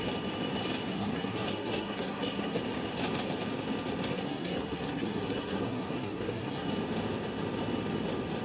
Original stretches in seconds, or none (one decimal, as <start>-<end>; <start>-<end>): 0.0-0.9; 2.6-4.1; 6.7-8.4